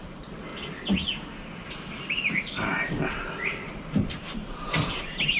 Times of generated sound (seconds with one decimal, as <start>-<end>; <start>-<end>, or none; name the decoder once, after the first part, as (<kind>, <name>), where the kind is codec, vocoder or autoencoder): 0.0-0.5 (vocoder, BigVGAN v2); 3.7-5.4